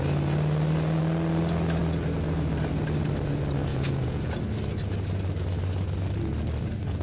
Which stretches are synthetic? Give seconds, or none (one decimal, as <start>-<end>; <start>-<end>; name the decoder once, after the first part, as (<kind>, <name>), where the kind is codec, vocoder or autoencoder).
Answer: 3.7-4.4 (vocoder, Vocos)